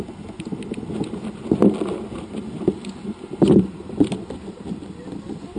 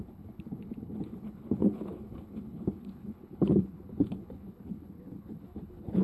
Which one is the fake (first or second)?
second